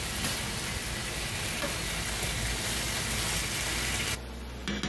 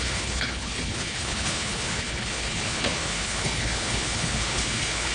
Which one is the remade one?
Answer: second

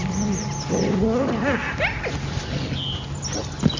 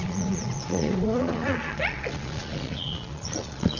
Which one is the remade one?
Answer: second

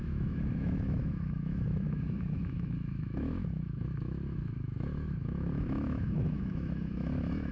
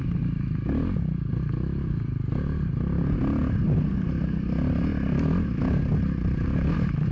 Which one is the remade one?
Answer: first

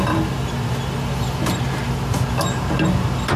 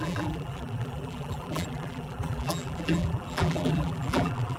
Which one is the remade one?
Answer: second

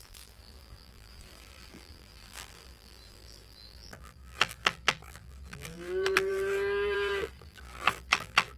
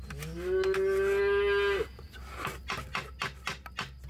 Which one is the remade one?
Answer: first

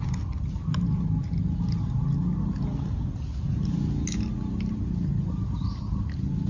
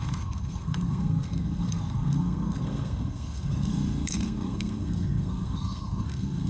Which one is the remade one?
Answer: second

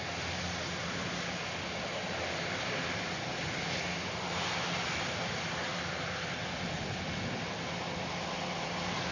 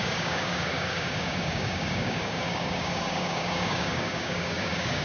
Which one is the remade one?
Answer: second